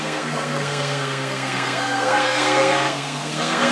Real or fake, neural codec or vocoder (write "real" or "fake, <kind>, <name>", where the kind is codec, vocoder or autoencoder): fake, codec, SNAC